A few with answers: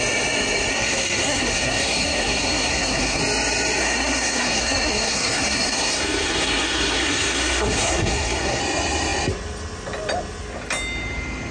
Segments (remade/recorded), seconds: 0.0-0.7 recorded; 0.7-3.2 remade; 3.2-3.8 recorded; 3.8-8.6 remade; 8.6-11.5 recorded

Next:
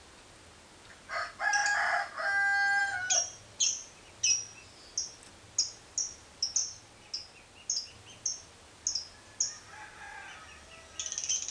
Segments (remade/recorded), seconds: 0.0-11.5 recorded